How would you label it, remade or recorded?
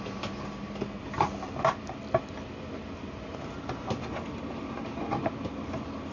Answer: recorded